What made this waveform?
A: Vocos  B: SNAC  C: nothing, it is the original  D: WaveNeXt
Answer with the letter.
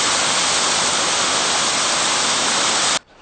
C